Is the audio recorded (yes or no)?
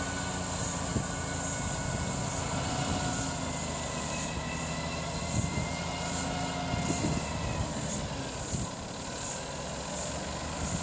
yes